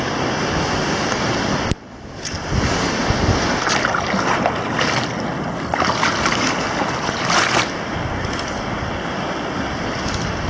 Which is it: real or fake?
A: real